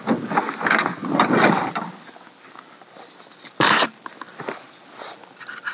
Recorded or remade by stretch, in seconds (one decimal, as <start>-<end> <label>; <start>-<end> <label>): 0.0-5.7 recorded